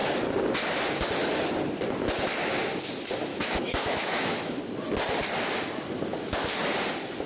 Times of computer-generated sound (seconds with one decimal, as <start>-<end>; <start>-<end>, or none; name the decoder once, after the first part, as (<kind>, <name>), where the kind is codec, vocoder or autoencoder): 3.3-4.6 (autoencoder, DAC-VAE)